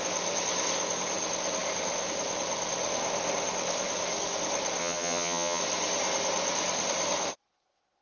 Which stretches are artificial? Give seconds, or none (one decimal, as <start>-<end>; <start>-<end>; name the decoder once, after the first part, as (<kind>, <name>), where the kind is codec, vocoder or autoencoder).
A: 4.8-5.6 (vocoder, HiFi-GAN)